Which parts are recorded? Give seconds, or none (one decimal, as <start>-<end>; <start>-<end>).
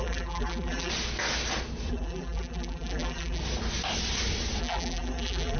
0.9-1.9; 3.4-4.6